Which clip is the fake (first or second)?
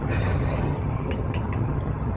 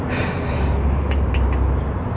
first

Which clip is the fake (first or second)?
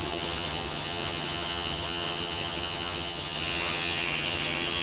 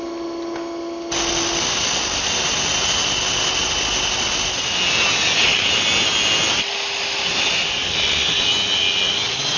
first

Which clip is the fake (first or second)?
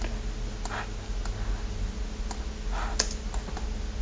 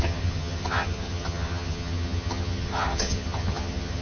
second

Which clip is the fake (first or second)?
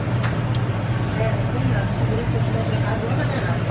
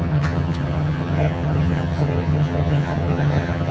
second